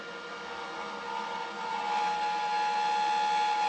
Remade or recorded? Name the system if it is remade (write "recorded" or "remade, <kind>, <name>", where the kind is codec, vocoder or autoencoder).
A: recorded